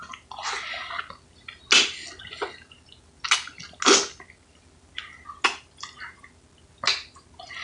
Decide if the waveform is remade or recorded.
recorded